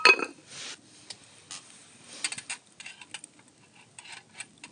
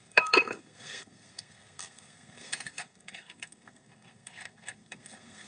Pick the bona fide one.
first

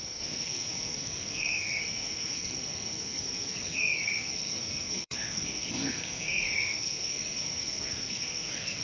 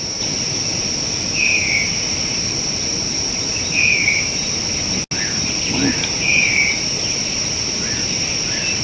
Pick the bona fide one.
second